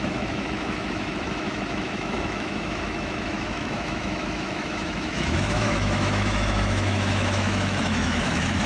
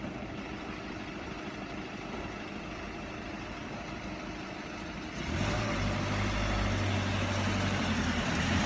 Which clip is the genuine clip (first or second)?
second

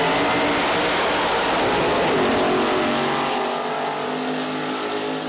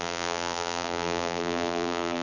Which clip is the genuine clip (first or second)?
first